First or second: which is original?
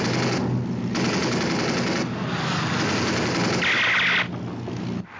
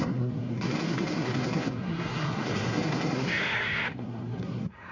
first